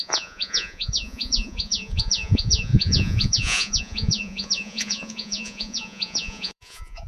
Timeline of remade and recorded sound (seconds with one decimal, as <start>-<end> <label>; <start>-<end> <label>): 0.0-7.1 remade